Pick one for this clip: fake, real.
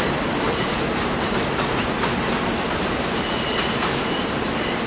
real